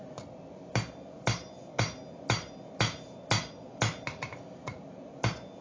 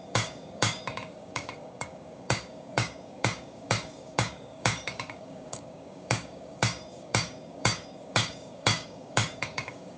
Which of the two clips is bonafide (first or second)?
first